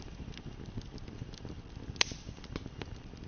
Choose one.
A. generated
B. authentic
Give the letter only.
B